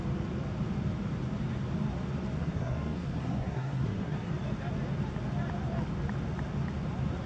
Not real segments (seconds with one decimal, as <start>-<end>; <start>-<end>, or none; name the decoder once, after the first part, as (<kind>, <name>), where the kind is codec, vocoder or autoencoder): 2.4-4.3 (codec, SNAC)